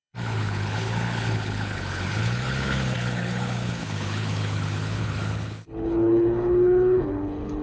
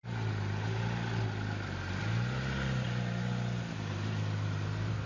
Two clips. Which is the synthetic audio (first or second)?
first